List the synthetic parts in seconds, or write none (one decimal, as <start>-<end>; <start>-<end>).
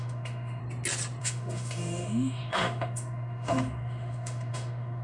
0.0-0.6; 1.2-5.0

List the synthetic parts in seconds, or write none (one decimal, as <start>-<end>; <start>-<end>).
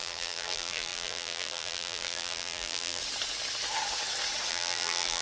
0.0-3.0; 4.5-5.2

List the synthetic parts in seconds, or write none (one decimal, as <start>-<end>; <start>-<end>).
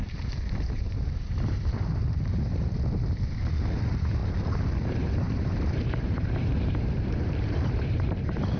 0.0-8.6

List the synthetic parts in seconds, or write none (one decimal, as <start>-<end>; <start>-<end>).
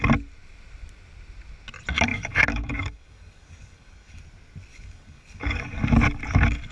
2.1-4.2; 4.7-5.8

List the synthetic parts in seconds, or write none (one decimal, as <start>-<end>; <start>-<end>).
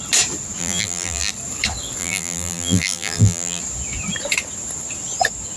0.6-1.3; 2.0-3.6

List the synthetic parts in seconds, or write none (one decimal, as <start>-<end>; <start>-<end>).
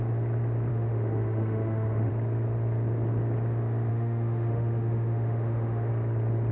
0.7-2.1; 3.9-5.9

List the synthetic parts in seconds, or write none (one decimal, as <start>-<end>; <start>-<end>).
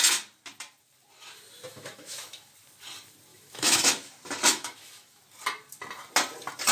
1.7-2.5; 3.3-4.1; 4.5-5.2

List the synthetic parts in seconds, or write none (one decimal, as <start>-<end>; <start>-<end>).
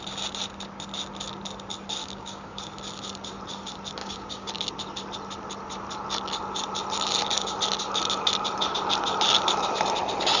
2.0-2.6; 4.0-4.5